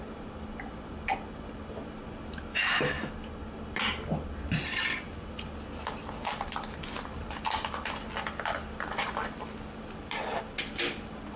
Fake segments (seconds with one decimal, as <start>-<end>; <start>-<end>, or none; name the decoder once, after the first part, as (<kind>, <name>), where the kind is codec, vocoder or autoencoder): 2.5-3.1 (autoencoder, DAC-VAE)